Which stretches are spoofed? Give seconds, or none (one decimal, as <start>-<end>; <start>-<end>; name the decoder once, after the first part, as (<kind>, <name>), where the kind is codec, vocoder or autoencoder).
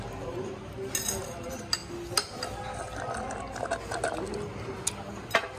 none